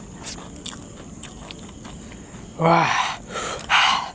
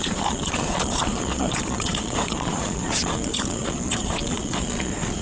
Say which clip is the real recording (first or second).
first